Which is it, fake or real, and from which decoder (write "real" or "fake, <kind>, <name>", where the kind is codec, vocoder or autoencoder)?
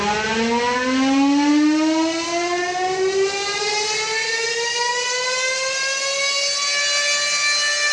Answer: real